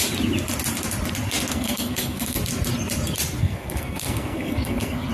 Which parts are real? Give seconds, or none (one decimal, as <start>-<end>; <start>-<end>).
0.0-1.5; 2.4-3.4